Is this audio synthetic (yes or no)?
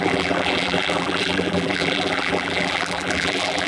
yes